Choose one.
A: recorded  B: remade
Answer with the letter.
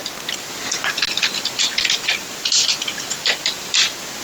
A